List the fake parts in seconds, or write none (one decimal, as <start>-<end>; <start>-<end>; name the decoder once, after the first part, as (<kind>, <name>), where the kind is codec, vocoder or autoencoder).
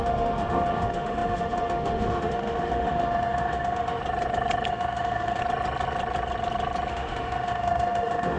0.0-4.0 (autoencoder, DAC-VAE); 4.7-5.4; 6.9-8.4